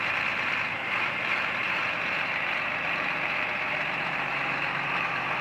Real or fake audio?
fake